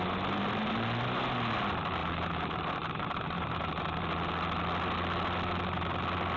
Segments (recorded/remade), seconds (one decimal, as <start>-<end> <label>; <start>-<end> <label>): 0.0-2.0 recorded; 2.0-4.0 remade; 4.0-6.4 recorded

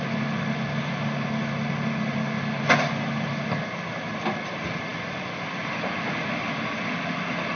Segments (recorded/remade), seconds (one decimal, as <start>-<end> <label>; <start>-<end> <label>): 0.0-7.6 recorded

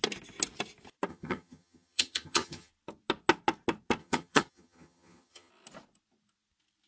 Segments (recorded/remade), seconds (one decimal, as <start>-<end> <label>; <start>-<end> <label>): 0.0-1.1 recorded; 1.1-2.7 remade; 2.7-4.0 recorded; 4.0-5.5 remade; 5.5-6.9 recorded

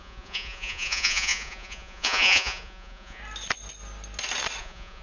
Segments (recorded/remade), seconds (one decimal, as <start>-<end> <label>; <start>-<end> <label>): 0.0-3.2 remade; 3.2-4.6 recorded; 4.6-5.0 remade

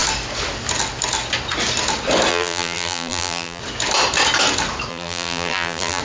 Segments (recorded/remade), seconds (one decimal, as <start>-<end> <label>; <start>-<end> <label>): 0.0-2.3 recorded; 2.3-3.6 remade; 3.6-4.9 recorded; 4.9-6.0 remade

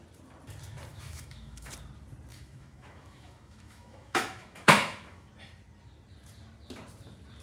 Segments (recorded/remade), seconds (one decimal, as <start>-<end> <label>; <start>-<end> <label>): 0.0-0.9 recorded; 0.9-1.7 remade; 1.7-2.3 recorded; 2.3-5.3 remade; 5.3-7.4 recorded

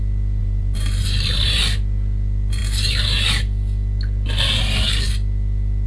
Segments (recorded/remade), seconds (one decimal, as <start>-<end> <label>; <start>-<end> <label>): 0.0-0.4 recorded; 0.4-1.6 remade; 1.6-5.9 recorded

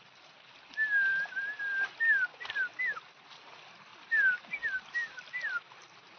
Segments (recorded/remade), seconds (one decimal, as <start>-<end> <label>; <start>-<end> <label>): 0.0-2.3 recorded; 2.3-2.8 remade; 2.8-6.2 recorded